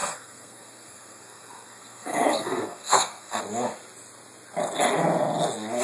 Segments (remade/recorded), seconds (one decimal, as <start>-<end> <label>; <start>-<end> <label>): 0.0-3.4 remade; 3.4-5.8 recorded